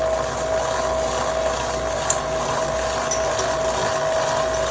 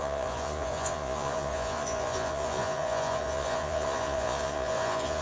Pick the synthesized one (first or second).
second